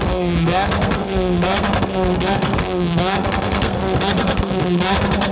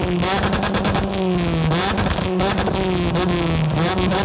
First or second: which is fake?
first